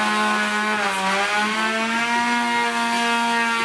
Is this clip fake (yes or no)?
no